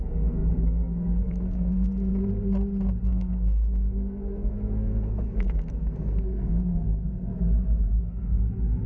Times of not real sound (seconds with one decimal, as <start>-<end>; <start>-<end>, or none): 0.0-2.1; 3.0-7.3; 8.0-8.9